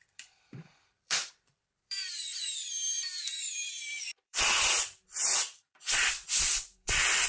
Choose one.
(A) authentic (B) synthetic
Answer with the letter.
B